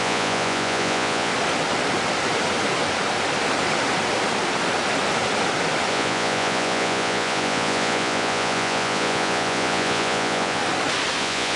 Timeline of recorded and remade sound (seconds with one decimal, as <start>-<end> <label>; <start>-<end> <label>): 0.0-1.3 remade; 1.3-5.9 recorded; 5.9-10.6 remade; 10.6-11.2 recorded; 11.2-11.6 remade